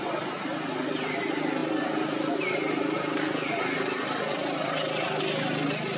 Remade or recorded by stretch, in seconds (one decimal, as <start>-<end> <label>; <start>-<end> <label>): 0.0-6.0 recorded